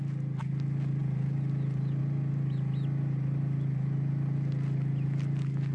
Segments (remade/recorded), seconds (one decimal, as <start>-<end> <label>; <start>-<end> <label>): 0.0-5.7 recorded